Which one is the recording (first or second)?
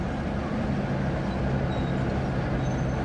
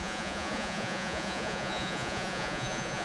first